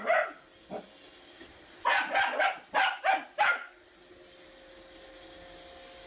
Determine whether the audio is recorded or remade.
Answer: recorded